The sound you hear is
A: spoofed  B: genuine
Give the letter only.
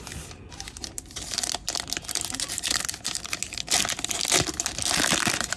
B